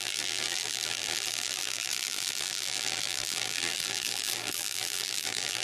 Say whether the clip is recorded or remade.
remade